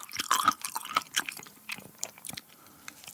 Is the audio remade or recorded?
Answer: remade